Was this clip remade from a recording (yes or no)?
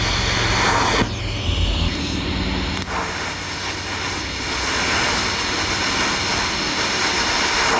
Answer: no